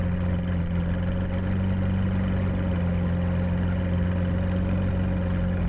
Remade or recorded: recorded